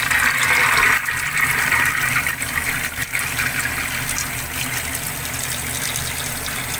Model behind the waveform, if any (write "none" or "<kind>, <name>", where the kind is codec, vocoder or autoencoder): none